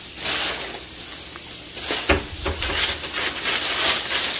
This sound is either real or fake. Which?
real